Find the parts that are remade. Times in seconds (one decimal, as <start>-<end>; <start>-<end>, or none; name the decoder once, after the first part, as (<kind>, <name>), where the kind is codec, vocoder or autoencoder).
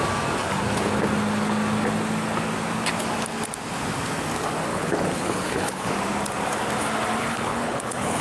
4.7-5.9 (codec, HILCodec); 7.2-8.2